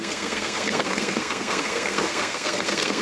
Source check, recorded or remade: remade